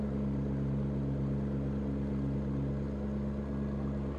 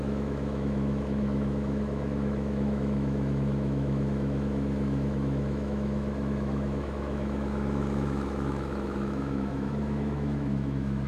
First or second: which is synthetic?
second